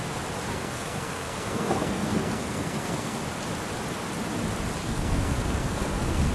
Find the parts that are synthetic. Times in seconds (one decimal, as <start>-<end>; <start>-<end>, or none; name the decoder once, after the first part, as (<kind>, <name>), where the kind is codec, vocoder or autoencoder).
0.5-3.2 (codec, SNAC); 4.8-6.3